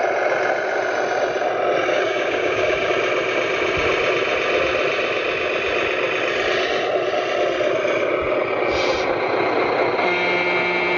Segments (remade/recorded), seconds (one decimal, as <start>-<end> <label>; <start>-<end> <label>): 0.0-1.9 recorded; 1.9-2.9 remade; 2.9-11.0 recorded